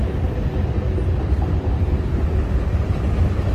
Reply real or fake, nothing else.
real